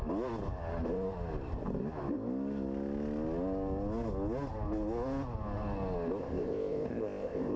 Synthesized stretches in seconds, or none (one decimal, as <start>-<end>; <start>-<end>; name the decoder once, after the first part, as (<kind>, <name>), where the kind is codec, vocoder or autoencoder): 6.2-7.6 (codec, ZipCodec)